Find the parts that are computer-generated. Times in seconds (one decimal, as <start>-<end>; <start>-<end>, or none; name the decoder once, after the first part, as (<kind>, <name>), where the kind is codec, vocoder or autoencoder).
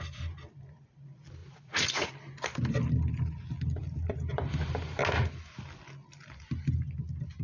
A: 1.4-2.1 (vocoder, Vocos)